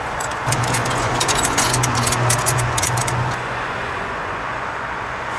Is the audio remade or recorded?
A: remade